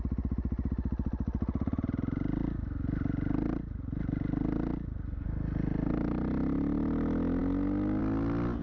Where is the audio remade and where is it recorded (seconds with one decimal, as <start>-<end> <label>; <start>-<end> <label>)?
0.0-8.6 recorded